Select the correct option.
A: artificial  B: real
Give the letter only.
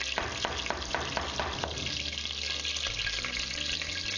B